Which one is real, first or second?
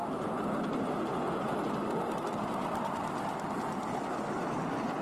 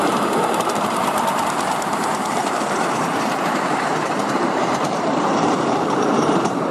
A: first